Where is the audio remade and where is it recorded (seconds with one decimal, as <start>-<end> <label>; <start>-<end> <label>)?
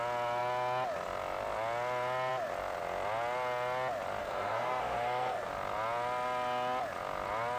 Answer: 0.0-4.2 recorded; 4.2-5.5 remade; 5.5-7.6 recorded